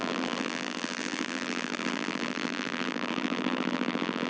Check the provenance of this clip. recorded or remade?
remade